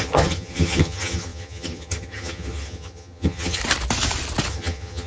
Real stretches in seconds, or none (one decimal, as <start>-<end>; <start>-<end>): 3.6-4.5